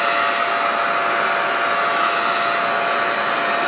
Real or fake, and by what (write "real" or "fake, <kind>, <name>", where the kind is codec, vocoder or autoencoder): real